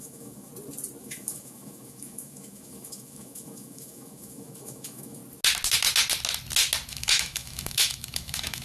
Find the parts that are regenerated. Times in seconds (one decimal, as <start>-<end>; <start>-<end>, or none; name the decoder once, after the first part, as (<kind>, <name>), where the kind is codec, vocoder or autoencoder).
0.0-0.5 (autoencoder, DAC-VAE); 1.0-5.2; 6.9-8.6

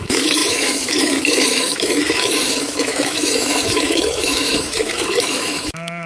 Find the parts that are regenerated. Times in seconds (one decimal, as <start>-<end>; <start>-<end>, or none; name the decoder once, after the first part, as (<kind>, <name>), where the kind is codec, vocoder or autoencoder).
0.0-6.1 (autoencoder, DAC-VAE)

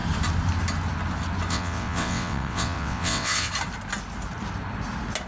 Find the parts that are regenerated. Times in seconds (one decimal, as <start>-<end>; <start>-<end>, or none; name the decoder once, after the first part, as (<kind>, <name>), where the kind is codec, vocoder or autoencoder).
1.5-3.5 (vocoder, WaveNeXt)

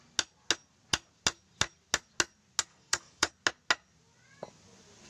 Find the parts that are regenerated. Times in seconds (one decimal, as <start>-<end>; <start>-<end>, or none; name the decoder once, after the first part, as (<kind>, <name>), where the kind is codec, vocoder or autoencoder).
2.7-3.3 (codec, DAC)

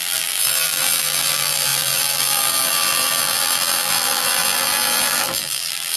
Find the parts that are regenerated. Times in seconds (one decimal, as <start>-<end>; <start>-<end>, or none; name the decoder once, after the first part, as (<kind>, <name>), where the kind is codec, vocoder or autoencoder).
0.0-6.0 (vocoder, BigVGAN v2)

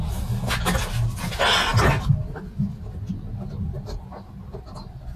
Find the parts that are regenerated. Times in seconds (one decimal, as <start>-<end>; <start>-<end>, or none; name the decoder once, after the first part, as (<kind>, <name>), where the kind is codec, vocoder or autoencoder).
none